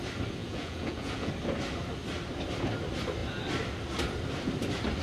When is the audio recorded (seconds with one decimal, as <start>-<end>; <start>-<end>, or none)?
0.0-0.4; 1.3-5.0